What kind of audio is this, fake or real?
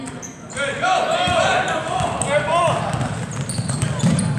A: real